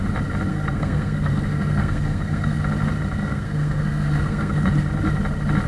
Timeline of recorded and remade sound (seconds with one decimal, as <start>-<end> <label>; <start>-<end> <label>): 0.0-0.5 recorded; 0.5-2.6 remade; 2.6-3.2 recorded; 3.2-4.7 remade; 4.7-5.7 recorded